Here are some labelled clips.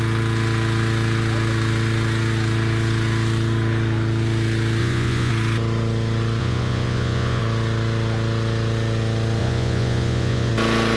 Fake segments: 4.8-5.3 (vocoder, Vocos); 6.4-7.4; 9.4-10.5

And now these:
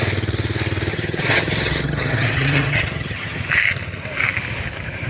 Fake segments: 0.9-3.4 (vocoder, HiFi-GAN)

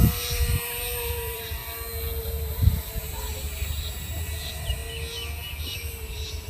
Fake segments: 0.0-1.6 (vocoder, BigVGAN v2); 2.2-4.8; 5.6-6.5

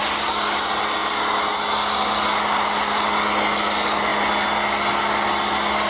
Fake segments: none